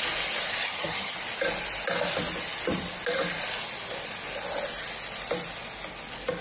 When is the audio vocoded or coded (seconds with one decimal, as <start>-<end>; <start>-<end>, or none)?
0.6-1.2